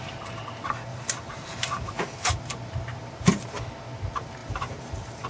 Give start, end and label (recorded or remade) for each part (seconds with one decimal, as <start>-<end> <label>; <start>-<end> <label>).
0.0-0.9 recorded; 0.9-3.6 remade; 3.6-4.4 recorded; 4.4-5.3 remade